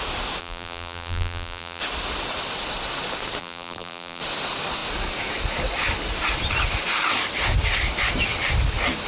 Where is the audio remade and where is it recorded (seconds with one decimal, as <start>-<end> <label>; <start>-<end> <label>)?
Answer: 0.0-0.4 recorded; 0.4-1.8 remade; 1.8-3.4 recorded; 3.4-4.2 remade; 4.2-9.1 recorded